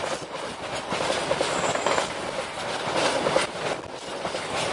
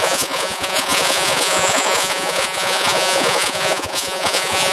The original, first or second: first